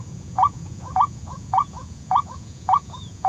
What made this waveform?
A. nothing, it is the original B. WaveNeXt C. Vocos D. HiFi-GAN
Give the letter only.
C